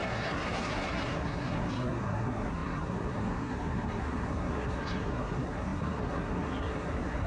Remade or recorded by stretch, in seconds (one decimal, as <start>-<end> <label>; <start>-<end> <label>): 0.0-7.3 remade